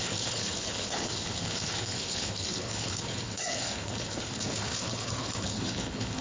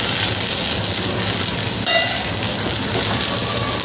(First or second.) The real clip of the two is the second